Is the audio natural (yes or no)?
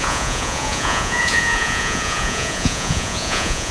no